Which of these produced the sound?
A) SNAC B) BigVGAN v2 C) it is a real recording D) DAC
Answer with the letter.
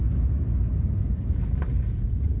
C